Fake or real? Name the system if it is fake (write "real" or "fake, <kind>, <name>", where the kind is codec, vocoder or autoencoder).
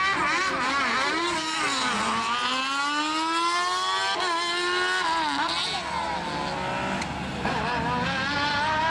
real